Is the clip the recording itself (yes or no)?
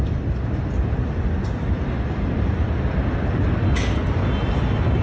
yes